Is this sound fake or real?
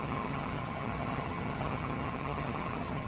fake